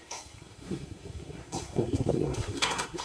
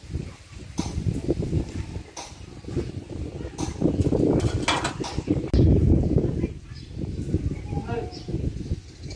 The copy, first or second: first